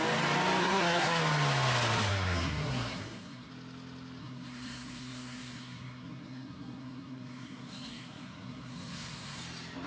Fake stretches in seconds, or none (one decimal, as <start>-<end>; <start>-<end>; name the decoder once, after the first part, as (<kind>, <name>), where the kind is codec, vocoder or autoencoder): 0.6-1.2 (codec, SNAC); 2.1-3.5; 4.2-9.4